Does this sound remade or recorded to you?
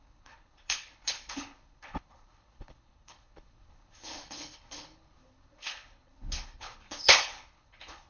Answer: remade